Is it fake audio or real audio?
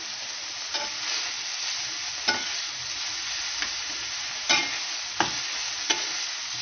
real